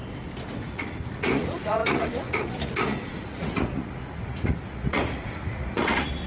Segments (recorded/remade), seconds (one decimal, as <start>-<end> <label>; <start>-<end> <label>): 0.0-0.7 recorded; 0.7-6.3 remade